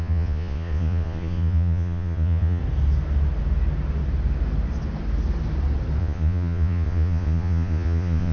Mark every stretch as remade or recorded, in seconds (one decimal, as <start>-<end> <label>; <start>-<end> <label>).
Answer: 0.0-2.6 remade; 2.6-6.0 recorded; 6.0-8.3 remade